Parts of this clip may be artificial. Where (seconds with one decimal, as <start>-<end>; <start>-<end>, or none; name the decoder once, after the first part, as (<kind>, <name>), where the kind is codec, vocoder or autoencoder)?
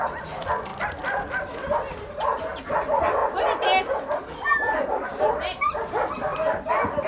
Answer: none